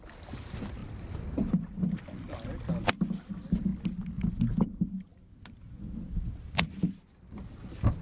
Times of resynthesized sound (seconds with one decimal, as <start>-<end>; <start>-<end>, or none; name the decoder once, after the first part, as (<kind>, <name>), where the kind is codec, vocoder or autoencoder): none